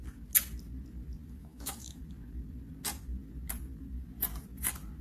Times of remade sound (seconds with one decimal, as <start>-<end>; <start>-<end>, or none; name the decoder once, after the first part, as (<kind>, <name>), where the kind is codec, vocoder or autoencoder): 1.4-2.0 (autoencoder, DAC-VAE)